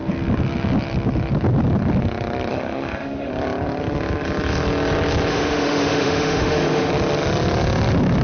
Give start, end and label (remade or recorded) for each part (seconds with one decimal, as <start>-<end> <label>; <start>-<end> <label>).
0.0-2.5 recorded; 2.5-3.3 remade; 3.3-5.3 recorded; 5.3-6.9 remade; 6.9-8.2 recorded